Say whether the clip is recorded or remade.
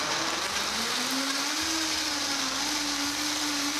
recorded